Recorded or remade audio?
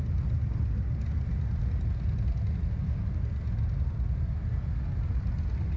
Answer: recorded